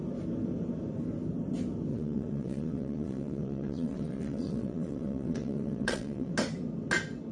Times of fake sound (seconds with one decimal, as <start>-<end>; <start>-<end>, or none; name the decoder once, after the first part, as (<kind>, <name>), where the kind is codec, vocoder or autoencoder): 1.9-6.3 (vocoder, WaveNeXt)